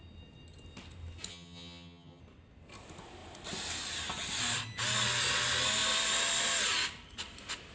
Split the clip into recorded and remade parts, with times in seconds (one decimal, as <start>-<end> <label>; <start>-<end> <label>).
0.0-1.3 recorded; 1.3-2.2 remade; 2.2-7.7 recorded